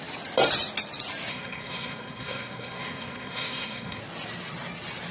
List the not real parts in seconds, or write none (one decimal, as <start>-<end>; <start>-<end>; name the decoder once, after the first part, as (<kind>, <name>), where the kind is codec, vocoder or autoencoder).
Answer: 1.3-4.0 (codec, SNAC)